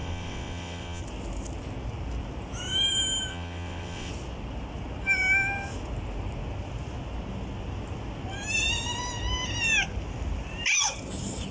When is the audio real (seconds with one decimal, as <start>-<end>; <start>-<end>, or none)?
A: 1.0-3.3; 4.1-11.5